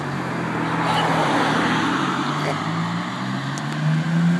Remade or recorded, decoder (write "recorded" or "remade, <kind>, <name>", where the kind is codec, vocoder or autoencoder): recorded